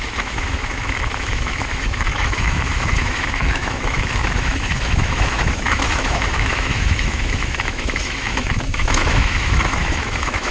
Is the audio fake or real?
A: fake